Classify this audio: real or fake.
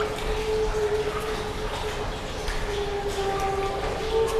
real